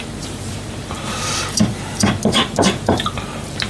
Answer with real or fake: fake